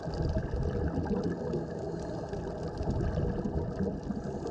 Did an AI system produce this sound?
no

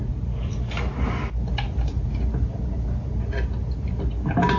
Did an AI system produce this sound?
no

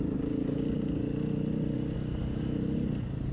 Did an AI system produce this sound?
no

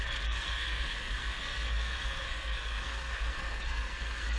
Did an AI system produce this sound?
yes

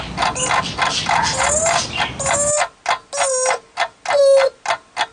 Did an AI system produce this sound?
no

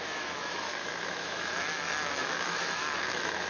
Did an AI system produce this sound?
yes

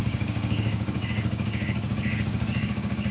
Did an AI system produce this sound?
yes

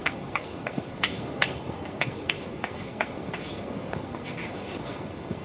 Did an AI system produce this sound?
yes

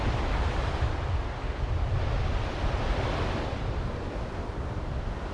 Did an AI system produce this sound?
no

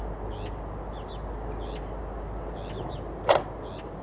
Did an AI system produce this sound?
no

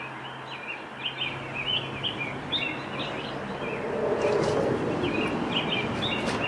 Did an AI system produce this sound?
no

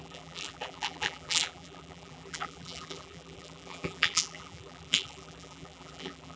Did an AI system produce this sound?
yes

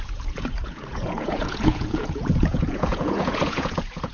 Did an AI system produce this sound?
yes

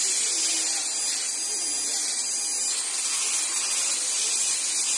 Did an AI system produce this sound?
no